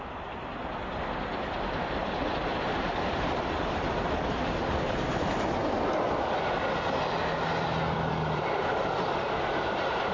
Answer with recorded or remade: recorded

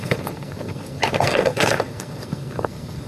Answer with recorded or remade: remade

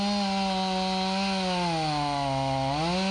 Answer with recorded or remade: recorded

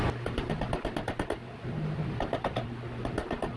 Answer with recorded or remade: recorded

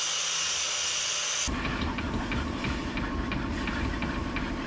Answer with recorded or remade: recorded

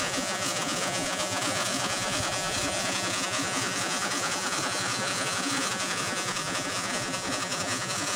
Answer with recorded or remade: remade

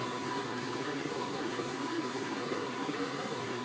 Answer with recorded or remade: remade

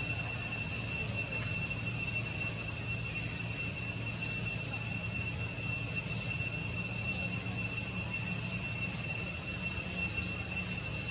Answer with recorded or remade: recorded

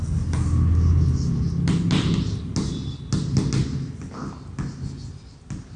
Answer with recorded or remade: recorded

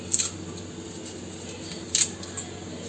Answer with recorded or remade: recorded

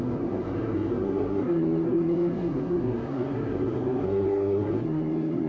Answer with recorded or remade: remade